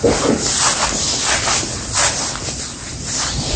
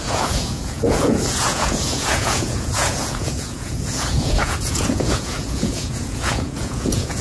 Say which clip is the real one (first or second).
first